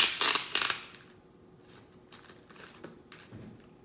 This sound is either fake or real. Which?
real